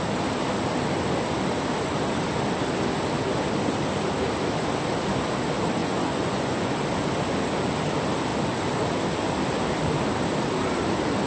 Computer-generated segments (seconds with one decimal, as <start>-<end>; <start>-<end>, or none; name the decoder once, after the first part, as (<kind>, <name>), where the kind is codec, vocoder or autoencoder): 5.8-6.7 (vocoder, Vocos)